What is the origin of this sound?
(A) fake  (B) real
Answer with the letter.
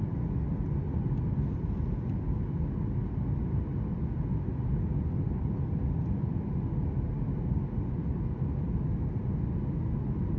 B